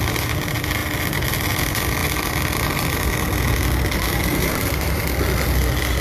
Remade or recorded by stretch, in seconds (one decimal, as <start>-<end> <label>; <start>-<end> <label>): 0.0-4.3 recorded; 4.3-5.0 remade; 5.0-6.0 recorded